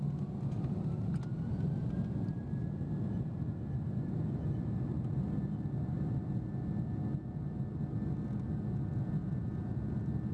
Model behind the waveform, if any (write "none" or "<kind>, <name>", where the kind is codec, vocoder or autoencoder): none